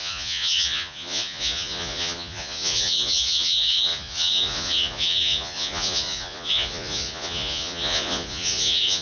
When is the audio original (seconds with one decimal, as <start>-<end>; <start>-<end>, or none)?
none